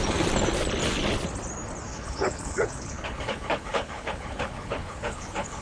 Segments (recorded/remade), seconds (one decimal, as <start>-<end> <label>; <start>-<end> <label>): 0.0-1.9 recorded; 1.9-5.6 remade